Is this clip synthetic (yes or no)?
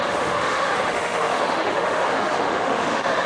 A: yes